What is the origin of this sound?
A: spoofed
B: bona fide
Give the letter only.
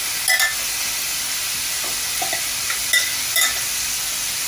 B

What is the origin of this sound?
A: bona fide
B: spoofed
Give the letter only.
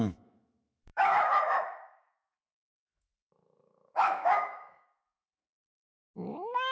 B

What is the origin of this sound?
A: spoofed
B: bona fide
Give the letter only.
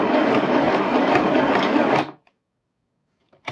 A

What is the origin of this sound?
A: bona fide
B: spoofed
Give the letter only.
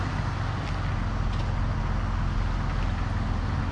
A